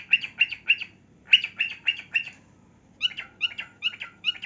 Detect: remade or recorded recorded